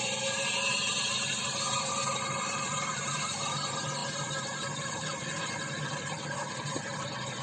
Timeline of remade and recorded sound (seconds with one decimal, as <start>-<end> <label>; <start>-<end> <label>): 0.0-7.4 recorded